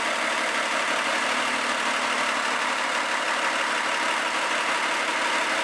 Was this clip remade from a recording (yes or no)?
no